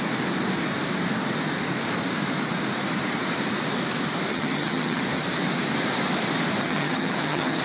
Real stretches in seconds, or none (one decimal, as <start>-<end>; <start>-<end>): 0.0-4.3; 5.0-6.6